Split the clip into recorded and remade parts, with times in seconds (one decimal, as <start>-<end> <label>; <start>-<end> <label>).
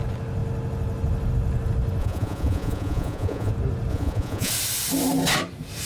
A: 0.0-2.0 recorded; 2.0-3.5 remade; 3.5-3.9 recorded; 3.9-4.5 remade; 4.5-5.9 recorded